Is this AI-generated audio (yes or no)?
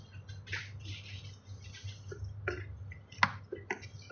no